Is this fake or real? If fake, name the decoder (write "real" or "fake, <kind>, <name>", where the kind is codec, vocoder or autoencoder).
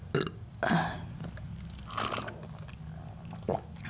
real